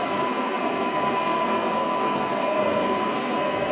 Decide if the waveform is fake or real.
fake